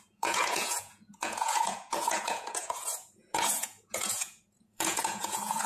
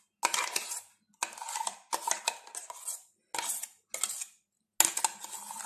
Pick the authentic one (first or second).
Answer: second